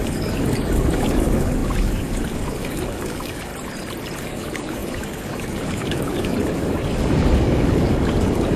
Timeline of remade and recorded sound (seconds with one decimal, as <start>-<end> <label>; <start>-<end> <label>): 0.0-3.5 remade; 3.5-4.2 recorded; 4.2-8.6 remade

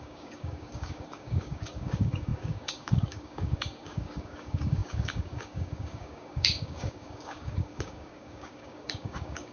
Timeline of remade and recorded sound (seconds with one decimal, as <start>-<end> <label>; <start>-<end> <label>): 0.0-9.5 remade

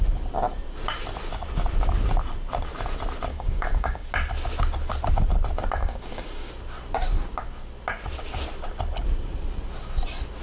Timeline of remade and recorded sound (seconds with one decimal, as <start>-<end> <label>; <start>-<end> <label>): 0.0-3.3 recorded; 3.3-4.1 remade; 4.1-5.8 recorded; 5.8-6.5 remade; 6.5-10.4 recorded

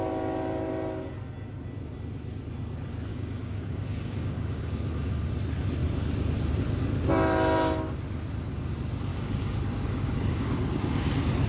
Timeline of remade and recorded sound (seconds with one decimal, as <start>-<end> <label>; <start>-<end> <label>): 0.0-3.1 recorded; 3.1-5.3 remade; 5.3-9.1 recorded; 9.1-11.1 remade; 11.1-11.5 recorded

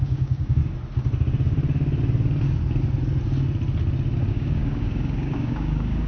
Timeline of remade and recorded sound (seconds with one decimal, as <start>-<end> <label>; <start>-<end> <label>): 0.0-0.6 remade; 0.6-4.3 recorded; 4.3-6.1 remade

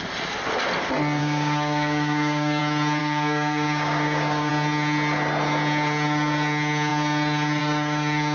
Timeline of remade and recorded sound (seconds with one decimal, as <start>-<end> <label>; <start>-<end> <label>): 0.0-1.2 recorded; 1.2-2.6 remade; 2.6-3.0 recorded; 3.0-4.5 remade; 4.5-8.3 recorded